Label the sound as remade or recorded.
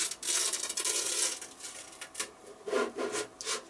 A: recorded